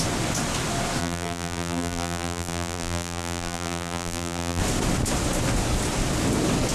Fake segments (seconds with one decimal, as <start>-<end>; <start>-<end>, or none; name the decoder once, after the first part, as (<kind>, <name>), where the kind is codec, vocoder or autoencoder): 1.0-4.6 (vocoder, BigVGAN v2)